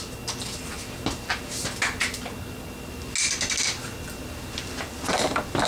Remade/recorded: recorded